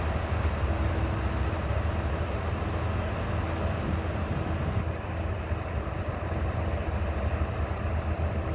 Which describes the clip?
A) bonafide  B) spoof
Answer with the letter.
A